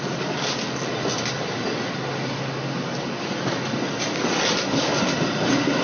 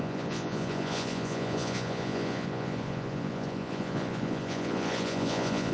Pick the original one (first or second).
first